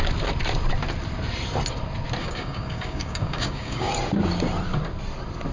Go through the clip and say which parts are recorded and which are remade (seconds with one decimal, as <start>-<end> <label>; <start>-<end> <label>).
0.0-2.2 recorded; 2.2-3.9 remade; 3.9-5.5 recorded